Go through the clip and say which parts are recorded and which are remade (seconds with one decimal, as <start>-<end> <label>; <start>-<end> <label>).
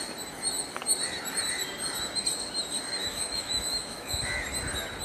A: 0.0-3.0 recorded; 3.0-4.2 remade; 4.2-5.0 recorded